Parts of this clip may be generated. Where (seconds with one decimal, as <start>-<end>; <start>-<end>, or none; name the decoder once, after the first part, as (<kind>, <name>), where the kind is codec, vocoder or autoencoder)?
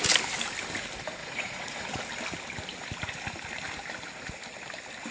1.2-2.0 (vocoder, Vocos)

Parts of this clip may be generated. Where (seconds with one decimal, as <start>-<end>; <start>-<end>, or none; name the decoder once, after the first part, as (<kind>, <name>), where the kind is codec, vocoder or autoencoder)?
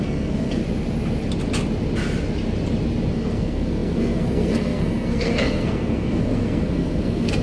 0.0-0.6 (codec, SNAC); 3.1-7.4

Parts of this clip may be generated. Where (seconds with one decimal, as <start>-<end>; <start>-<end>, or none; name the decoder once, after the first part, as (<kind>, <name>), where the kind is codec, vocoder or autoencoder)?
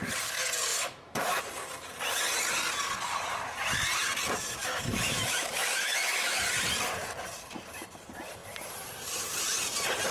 0.7-1.4 (autoencoder, DAC-VAE); 4.6-6.4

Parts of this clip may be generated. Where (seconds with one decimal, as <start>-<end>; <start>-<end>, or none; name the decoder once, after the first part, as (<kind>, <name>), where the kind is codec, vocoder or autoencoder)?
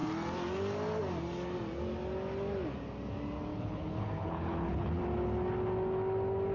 3.5-5.0 (codec, HILCodec)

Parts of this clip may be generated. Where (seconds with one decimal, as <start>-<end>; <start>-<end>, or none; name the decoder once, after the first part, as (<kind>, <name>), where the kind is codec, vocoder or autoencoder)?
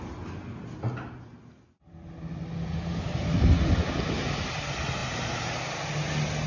none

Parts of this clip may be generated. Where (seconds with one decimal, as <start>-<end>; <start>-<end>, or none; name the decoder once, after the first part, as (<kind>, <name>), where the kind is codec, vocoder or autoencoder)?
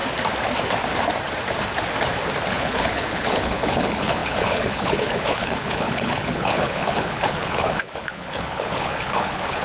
2.5-9.6 (codec, HILCodec)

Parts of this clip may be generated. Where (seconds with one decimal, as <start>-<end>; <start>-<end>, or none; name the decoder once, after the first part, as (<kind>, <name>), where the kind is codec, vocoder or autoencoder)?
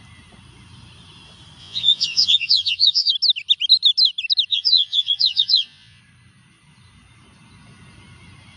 1.6-3.1 (vocoder, Vocos); 4.5-6.0